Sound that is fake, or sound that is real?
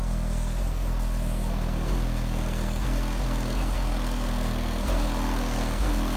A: fake